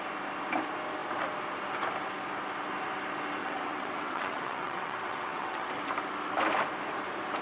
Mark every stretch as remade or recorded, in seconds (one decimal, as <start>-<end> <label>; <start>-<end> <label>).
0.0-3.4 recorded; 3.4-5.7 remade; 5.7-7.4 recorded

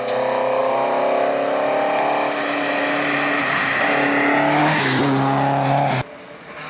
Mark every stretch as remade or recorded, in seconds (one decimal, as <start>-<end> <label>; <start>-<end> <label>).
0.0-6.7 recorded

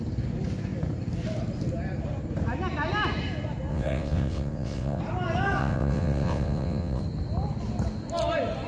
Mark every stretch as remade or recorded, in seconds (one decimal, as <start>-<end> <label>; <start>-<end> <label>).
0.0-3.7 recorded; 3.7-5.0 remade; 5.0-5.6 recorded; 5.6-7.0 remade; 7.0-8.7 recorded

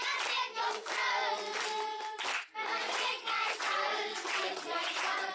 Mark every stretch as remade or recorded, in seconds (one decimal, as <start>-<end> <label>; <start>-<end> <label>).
0.0-2.8 recorded; 2.8-5.3 remade